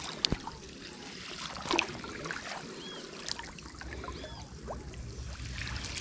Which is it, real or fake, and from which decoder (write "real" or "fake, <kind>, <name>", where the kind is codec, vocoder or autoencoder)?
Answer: real